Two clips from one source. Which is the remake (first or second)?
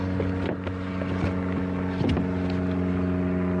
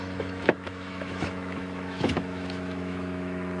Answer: second